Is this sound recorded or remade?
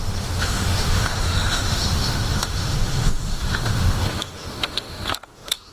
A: remade